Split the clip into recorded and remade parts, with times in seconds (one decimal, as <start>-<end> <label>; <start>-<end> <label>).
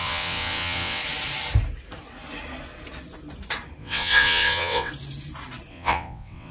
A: 0.0-1.0 remade; 1.0-3.8 recorded; 3.8-4.9 remade; 4.9-5.7 recorded; 5.7-6.5 remade